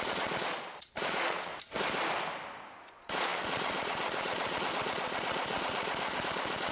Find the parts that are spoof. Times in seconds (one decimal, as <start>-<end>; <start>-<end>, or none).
0.0-1.5; 2.9-6.7